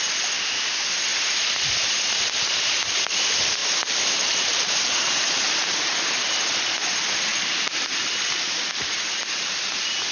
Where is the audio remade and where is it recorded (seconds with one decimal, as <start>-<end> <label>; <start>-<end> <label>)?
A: 0.0-1.1 recorded; 1.1-2.2 remade; 2.2-3.6 recorded; 3.6-6.5 remade; 6.5-10.1 recorded